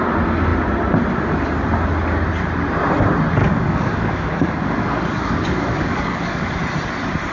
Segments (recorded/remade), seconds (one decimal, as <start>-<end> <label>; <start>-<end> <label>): 0.0-3.4 recorded; 3.4-6.6 remade; 6.6-7.3 recorded